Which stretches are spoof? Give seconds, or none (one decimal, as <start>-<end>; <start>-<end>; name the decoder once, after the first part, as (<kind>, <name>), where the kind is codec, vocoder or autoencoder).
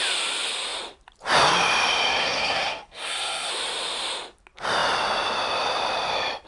2.2-3.5 (codec, SNAC)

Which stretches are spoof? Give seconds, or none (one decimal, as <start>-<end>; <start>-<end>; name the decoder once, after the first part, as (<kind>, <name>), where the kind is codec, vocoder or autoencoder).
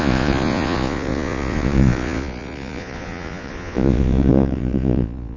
0.0-5.4 (vocoder, Vocos)